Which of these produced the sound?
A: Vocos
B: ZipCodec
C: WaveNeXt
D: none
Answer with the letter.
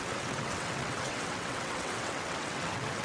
C